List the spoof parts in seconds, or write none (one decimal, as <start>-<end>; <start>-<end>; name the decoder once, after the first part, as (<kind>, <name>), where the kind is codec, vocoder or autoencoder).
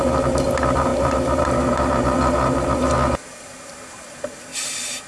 0.0-4.5 (vocoder, BigVGAN v2)